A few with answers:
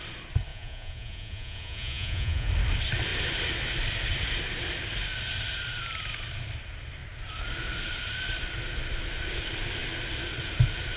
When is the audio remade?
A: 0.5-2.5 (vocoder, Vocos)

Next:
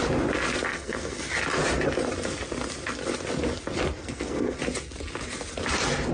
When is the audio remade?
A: 0.7-1.3 (codec, SNAC); 4.0-4.6

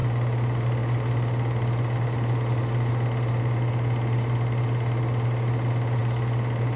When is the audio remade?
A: none

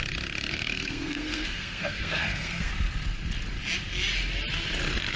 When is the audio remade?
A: 0.5-2.7 (codec, SNAC)

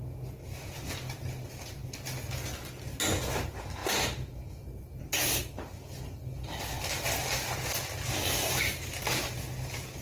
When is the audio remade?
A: none